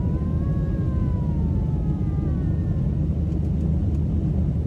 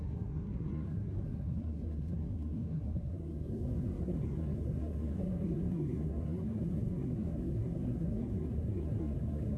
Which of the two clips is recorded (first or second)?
first